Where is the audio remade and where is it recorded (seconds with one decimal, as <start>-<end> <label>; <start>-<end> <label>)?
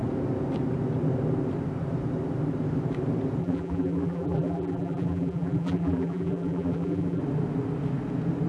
0.0-3.4 recorded; 3.4-7.2 remade; 7.2-8.5 recorded